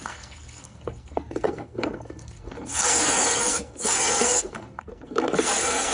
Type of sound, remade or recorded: remade